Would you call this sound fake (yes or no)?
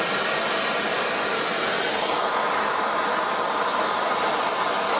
no